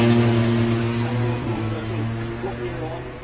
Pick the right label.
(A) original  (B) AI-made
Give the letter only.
A